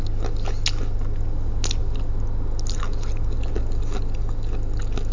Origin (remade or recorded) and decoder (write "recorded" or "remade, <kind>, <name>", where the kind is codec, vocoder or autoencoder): recorded